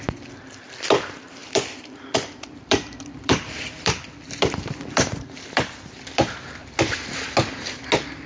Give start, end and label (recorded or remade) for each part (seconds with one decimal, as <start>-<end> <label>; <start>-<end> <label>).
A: 0.0-6.6 remade; 6.6-8.3 recorded